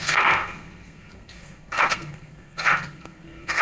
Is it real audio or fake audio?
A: fake